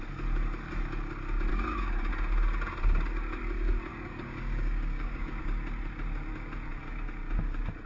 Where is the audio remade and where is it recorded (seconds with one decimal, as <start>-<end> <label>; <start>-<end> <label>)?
0.0-1.5 recorded; 1.5-2.1 remade; 2.1-3.9 recorded; 3.9-5.4 remade; 5.4-7.9 recorded